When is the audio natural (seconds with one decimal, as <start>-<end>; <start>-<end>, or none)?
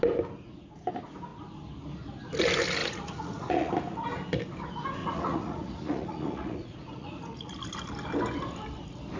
0.0-2.8; 3.7-5.0; 7.5-9.2